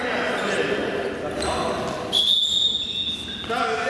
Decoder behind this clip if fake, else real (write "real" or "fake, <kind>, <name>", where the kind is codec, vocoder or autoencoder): real